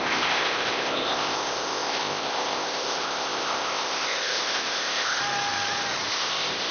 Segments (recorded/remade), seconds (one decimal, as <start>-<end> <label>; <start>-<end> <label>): 0.0-5.2 remade; 5.2-6.1 recorded; 6.1-6.7 remade